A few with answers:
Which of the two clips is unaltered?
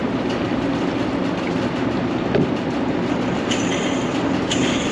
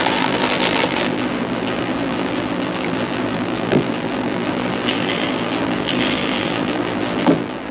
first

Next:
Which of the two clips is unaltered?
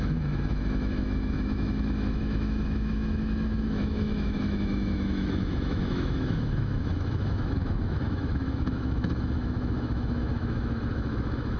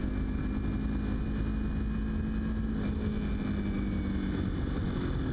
second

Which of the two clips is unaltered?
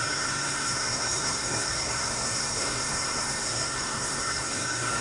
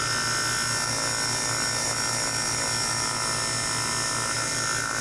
second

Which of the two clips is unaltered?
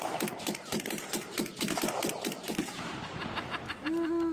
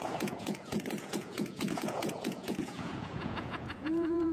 first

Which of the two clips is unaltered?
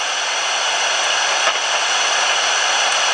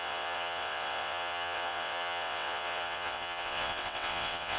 first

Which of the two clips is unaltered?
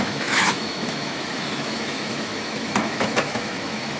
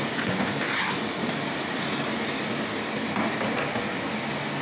second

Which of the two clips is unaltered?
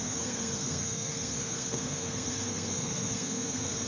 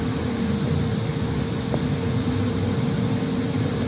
second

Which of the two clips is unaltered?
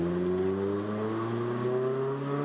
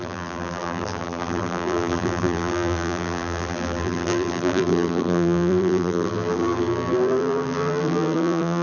first